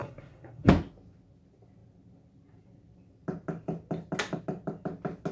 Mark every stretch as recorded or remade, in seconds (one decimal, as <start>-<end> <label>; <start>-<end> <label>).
0.0-0.7 remade; 0.7-5.3 recorded